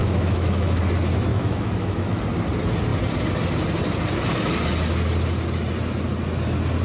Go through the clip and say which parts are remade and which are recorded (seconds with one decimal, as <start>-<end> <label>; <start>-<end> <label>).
0.0-0.8 remade; 0.8-1.3 recorded; 1.3-2.2 remade; 2.2-6.8 recorded